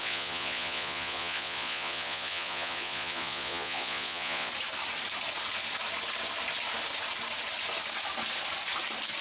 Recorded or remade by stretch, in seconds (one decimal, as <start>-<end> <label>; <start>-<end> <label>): 0.0-4.5 remade; 4.5-9.2 recorded